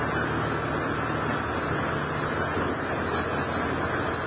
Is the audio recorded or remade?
recorded